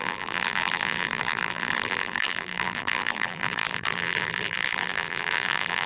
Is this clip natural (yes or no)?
no